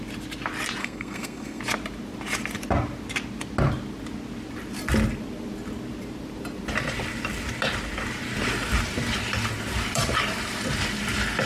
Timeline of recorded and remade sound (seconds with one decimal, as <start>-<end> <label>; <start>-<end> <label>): 0.0-0.8 recorded; 0.8-1.6 remade; 1.6-11.5 recorded